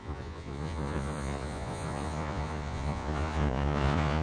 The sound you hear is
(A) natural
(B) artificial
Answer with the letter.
B